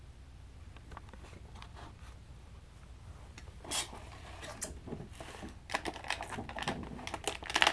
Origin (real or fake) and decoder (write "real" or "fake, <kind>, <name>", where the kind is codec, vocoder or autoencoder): real